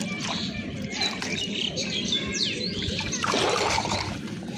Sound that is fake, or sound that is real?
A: fake